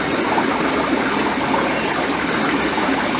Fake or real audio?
real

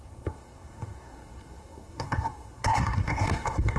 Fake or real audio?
fake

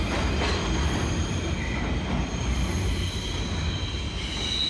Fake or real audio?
real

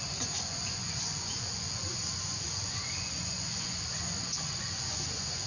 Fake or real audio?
fake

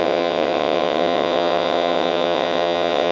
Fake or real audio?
fake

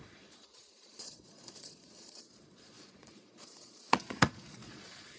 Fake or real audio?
fake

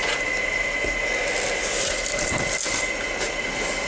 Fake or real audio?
real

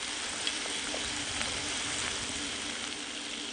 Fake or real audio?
fake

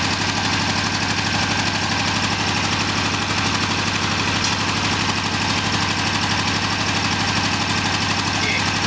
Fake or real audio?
real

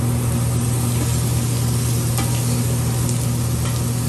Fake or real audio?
real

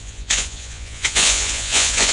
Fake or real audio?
fake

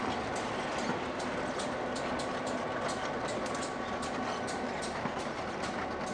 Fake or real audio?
real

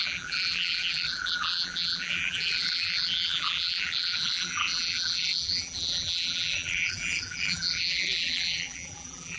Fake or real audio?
fake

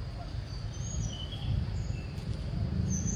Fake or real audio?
real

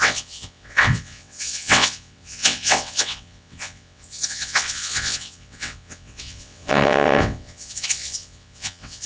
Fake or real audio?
fake